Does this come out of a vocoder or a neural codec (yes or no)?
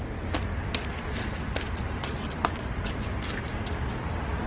no